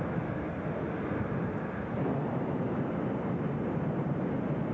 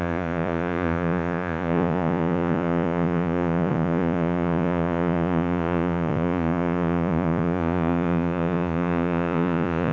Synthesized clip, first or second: second